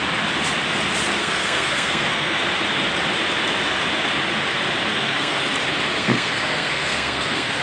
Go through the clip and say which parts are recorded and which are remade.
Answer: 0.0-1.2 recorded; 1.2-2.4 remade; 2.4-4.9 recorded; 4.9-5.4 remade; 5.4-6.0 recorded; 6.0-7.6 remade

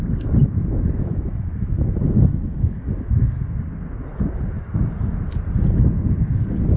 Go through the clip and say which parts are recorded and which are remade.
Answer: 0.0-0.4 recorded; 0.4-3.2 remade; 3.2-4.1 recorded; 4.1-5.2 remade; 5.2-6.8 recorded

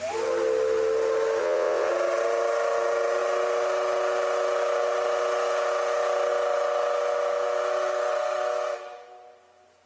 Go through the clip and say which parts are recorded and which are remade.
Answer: 0.0-1.4 recorded; 1.4-1.9 remade; 1.9-9.9 recorded